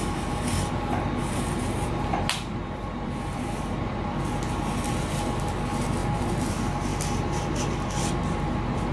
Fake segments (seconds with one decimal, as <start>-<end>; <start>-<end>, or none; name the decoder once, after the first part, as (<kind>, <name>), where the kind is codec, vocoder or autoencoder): 2.6-3.9 (vocoder, BigVGAN v2); 6.0-6.5